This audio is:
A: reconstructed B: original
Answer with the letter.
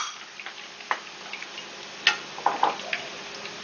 B